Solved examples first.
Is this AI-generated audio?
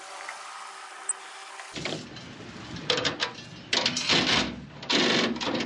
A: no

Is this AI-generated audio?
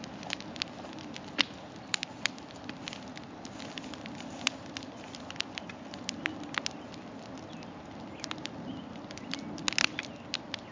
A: no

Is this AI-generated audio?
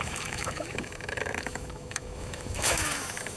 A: yes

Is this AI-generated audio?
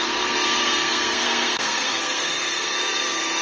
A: yes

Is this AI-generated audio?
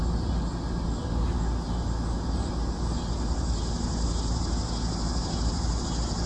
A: no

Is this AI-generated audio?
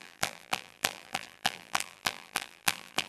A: yes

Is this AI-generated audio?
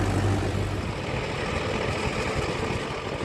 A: no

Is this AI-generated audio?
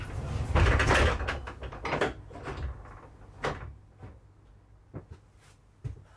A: no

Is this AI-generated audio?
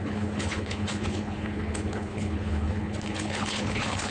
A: yes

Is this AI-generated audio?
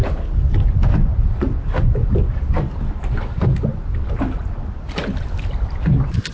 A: no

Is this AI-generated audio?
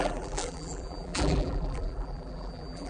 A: yes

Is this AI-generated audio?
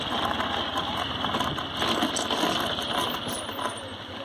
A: no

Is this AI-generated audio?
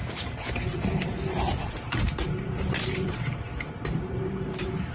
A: yes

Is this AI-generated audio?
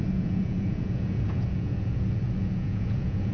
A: yes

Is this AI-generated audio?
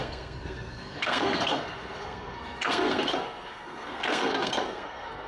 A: yes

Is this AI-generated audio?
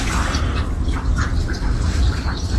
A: no